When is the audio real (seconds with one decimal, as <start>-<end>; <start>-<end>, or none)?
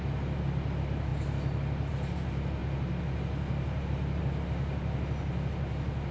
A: 0.0-6.1